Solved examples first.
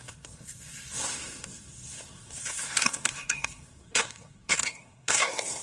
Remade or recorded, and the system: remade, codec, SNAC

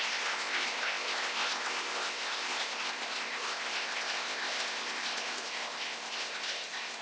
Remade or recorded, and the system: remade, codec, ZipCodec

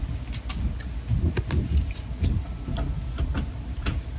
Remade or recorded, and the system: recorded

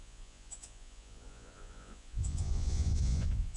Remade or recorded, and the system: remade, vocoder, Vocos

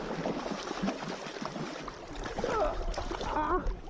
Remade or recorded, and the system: recorded